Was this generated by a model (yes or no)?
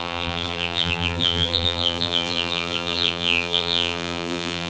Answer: yes